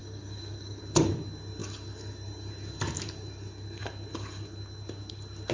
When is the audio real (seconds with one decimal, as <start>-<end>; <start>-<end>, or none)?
0.8-5.5